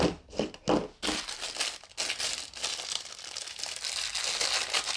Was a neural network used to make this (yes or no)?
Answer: no